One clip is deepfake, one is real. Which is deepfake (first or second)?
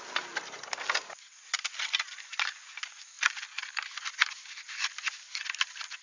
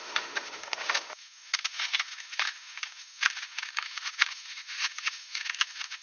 second